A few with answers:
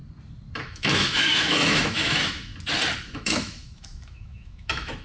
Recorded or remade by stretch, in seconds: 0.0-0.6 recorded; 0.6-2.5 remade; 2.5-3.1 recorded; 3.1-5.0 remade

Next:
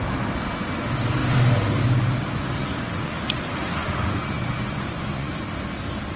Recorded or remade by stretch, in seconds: 0.0-2.6 recorded; 2.6-5.4 remade; 5.4-6.2 recorded

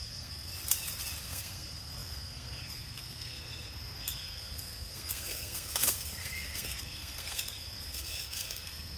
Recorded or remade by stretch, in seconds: 0.0-0.5 remade; 0.5-1.2 recorded; 1.2-9.0 remade

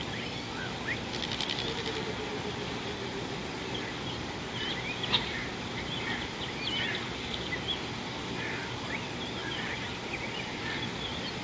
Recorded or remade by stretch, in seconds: 0.0-11.4 recorded

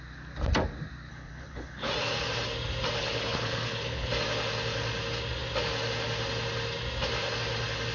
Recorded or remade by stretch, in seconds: 0.0-1.1 recorded; 1.1-1.9 remade; 1.9-3.0 recorded; 3.0-4.1 remade; 4.1-7.9 recorded

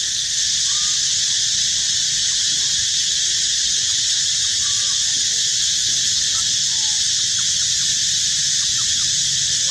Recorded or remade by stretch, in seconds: 0.0-5.8 recorded; 5.8-6.6 remade; 6.6-9.7 recorded

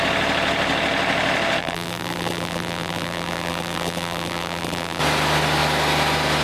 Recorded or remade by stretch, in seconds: 0.0-1.6 recorded; 1.6-5.0 remade; 5.0-6.4 recorded

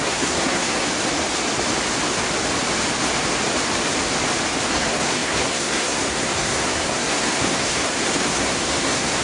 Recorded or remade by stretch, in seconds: 0.0-0.9 remade; 0.9-4.7 recorded; 4.7-9.2 remade